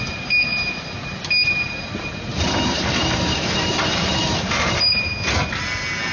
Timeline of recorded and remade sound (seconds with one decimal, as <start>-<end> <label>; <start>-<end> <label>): 0.0-2.3 recorded; 2.3-5.1 remade; 5.1-6.1 recorded